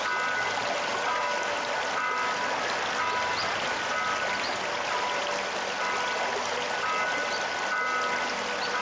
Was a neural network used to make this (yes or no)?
no